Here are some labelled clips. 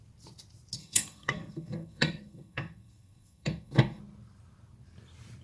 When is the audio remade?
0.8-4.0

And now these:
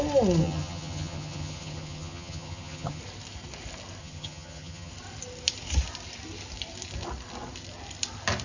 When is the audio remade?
0.4-3.0; 4.0-4.9

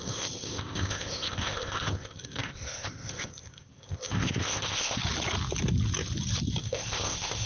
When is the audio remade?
0.0-5.0; 6.6-7.5

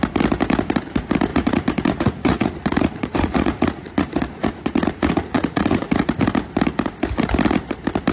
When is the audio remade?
1.3-6.2

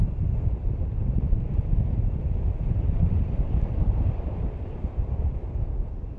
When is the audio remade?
1.5-5.2

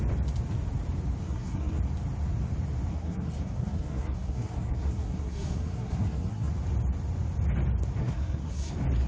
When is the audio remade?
1.2-1.8; 2.9-6.5; 8.0-8.7